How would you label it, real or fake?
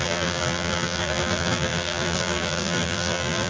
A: fake